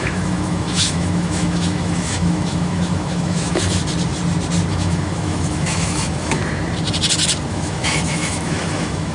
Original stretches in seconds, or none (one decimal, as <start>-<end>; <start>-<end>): 3.8-4.7; 6.4-7.5